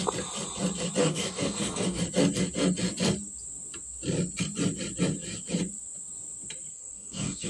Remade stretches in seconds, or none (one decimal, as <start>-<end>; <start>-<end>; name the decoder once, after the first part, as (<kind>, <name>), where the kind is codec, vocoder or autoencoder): 1.0-2.0 (codec, DAC); 6.7-7.5